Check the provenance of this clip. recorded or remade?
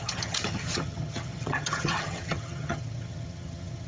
remade